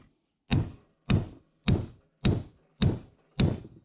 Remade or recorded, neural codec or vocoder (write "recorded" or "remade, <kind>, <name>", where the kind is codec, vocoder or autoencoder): recorded